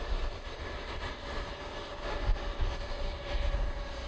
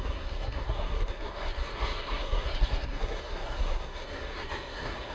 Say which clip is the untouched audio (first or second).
first